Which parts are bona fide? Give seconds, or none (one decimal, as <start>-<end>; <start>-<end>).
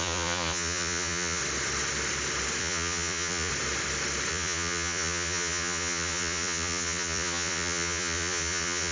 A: 1.4-2.6; 3.5-4.3